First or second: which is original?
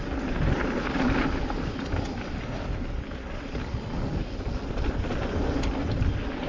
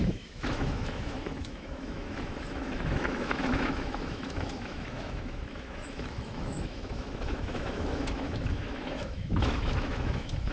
first